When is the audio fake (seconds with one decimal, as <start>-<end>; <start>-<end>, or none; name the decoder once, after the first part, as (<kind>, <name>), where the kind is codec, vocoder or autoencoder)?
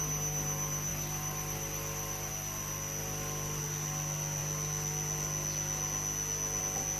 0.9-2.3 (vocoder, BigVGAN v2); 3.0-3.6